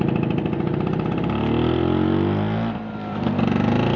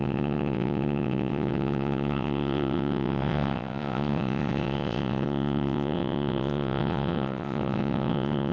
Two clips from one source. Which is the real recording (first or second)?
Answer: first